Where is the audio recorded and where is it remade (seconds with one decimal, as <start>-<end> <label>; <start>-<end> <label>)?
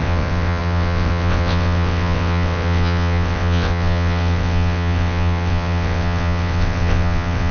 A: 0.0-7.5 remade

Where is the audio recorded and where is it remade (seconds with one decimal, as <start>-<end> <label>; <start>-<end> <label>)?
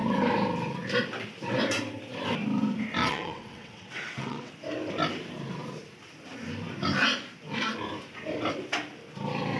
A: 0.0-3.0 recorded; 3.0-4.5 remade; 4.5-9.6 recorded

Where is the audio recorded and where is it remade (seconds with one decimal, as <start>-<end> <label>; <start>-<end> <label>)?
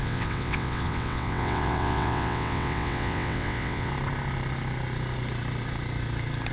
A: 0.0-3.9 remade; 3.9-6.5 recorded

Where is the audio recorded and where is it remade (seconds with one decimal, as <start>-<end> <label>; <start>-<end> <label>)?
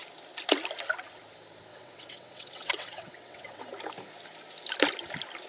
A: 0.0-1.7 recorded; 1.7-3.6 remade; 3.6-5.5 recorded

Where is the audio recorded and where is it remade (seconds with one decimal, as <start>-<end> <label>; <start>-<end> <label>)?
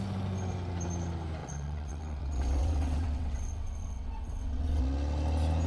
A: 0.0-1.4 recorded; 1.4-4.8 remade; 4.8-5.7 recorded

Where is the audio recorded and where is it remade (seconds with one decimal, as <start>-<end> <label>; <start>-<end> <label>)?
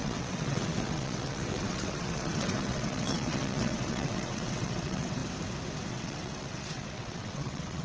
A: 0.0-5.2 remade; 5.2-5.9 recorded; 5.9-7.8 remade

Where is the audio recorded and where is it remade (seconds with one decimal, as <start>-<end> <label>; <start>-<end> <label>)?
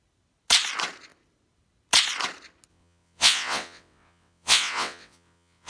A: 0.0-2.7 recorded; 2.7-5.7 remade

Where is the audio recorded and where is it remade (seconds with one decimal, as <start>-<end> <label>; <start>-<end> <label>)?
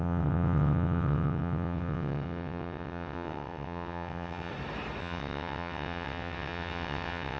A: 0.0-4.5 remade; 4.5-5.0 recorded; 5.0-7.4 remade